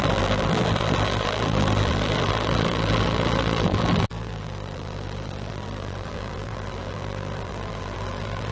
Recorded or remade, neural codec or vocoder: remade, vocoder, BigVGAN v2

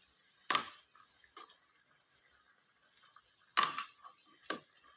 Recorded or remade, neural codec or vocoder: recorded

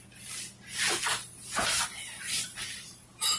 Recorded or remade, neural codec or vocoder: recorded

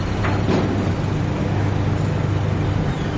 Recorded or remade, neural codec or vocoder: recorded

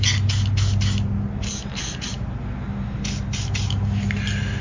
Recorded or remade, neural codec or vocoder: recorded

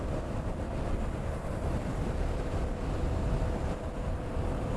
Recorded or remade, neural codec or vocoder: recorded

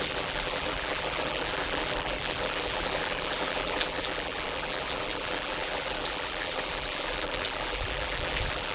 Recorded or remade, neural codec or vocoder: remade, vocoder, BigVGAN v2